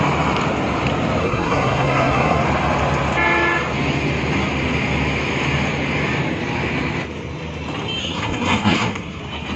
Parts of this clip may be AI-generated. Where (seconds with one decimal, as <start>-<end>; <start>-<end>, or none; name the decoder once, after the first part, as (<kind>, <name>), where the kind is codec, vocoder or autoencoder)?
1.2-2.4 (codec, SNAC); 8.0-9.2